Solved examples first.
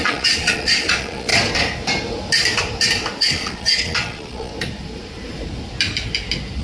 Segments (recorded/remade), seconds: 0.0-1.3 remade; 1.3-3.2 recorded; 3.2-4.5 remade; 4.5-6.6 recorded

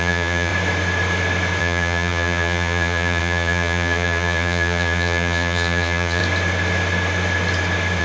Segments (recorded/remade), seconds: 0.0-0.5 remade; 0.5-1.6 recorded; 1.6-6.2 remade; 6.2-8.0 recorded

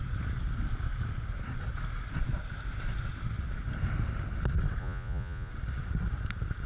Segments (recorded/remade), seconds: 0.0-4.8 recorded; 4.8-5.5 remade; 5.5-6.7 recorded

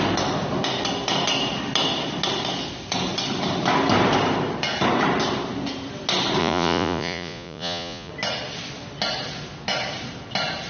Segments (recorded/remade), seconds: 0.0-6.4 recorded; 6.4-8.1 remade; 8.1-10.7 recorded

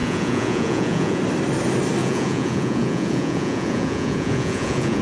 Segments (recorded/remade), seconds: 0.0-1.2 remade; 1.2-2.0 recorded; 2.0-5.0 remade

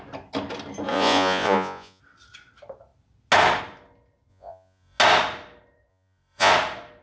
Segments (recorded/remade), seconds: 0.0-0.9 recorded; 0.9-2.0 remade; 2.0-4.3 recorded; 4.3-5.0 remade; 5.0-5.9 recorded; 5.9-6.5 remade; 6.5-7.0 recorded

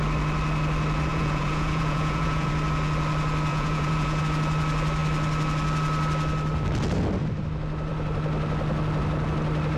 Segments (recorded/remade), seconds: 0.0-1.1 recorded; 1.1-2.5 remade; 2.5-3.5 recorded; 3.5-4.2 remade; 4.2-9.8 recorded